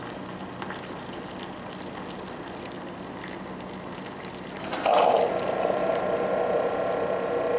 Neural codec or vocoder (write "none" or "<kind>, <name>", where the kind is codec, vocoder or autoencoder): none